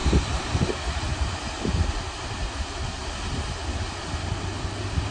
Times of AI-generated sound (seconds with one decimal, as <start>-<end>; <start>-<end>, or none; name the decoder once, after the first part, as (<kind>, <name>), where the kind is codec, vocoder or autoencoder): 0.0-0.7 (vocoder, BigVGAN v2); 1.1-1.9